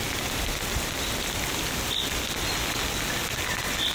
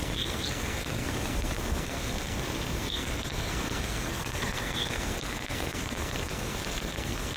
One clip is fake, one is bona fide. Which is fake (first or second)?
second